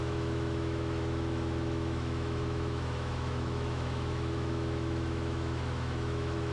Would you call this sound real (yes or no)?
no